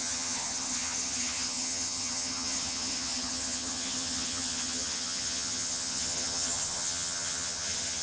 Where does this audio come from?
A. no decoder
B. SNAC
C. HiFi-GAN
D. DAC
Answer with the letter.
C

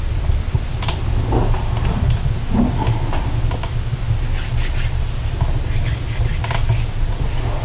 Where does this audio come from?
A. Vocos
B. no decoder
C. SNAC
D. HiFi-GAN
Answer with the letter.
B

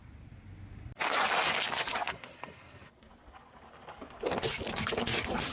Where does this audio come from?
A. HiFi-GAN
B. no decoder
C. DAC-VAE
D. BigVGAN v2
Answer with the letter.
B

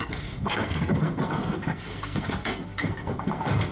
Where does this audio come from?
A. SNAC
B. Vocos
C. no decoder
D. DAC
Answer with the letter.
A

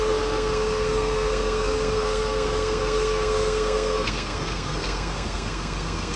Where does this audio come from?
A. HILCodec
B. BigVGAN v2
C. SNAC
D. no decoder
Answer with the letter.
C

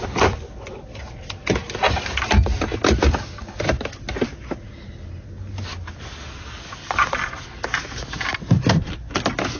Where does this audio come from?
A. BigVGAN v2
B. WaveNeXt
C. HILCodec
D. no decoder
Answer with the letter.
D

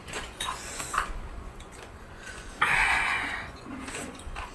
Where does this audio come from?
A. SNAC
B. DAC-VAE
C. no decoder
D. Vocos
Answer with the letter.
D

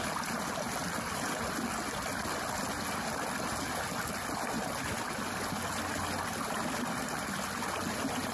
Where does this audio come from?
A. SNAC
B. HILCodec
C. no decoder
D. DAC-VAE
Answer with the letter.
C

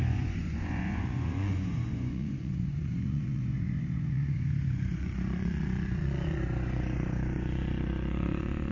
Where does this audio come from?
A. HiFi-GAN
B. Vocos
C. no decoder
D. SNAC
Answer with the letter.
B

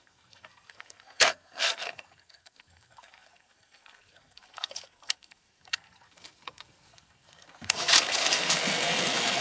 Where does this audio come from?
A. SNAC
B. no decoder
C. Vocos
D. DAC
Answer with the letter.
A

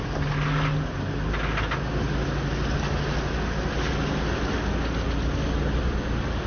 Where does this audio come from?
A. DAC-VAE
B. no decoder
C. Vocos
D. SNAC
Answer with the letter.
B